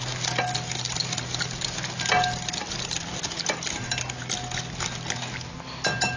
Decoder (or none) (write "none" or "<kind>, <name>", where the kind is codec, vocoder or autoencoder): none